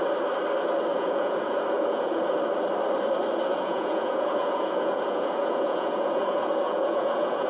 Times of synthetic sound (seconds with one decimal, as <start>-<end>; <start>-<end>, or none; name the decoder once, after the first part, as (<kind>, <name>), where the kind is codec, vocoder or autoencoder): 0.9-2.2 (vocoder, Vocos); 3.5-7.5